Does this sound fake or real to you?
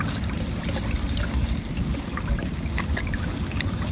real